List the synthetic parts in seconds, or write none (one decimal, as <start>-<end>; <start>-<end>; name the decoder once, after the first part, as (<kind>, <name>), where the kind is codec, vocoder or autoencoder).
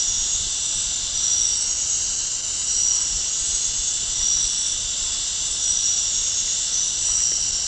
none